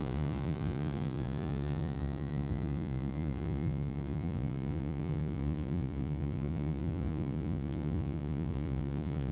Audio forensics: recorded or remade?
remade